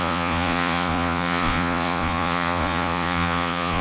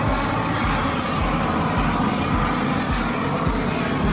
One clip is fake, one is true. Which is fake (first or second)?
first